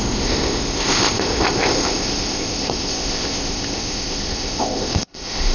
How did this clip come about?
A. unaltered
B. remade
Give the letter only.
B